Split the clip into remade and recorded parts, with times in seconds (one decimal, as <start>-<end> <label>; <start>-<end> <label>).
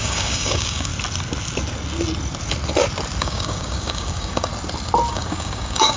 0.0-0.9 remade; 0.9-3.2 recorded; 3.2-4.5 remade; 4.5-5.1 recorded; 5.1-6.0 remade